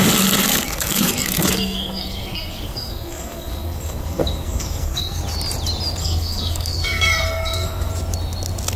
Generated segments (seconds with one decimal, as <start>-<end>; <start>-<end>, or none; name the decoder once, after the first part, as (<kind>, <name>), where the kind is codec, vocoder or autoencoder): 0.5-5.2 (codec, SNAC); 6.0-7.9